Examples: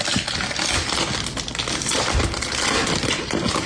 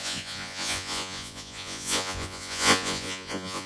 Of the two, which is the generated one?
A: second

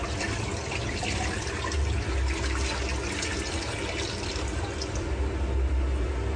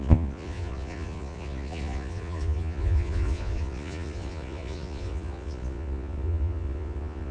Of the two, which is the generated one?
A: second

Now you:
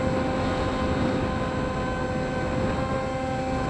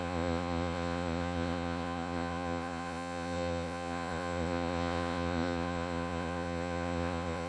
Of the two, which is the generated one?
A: second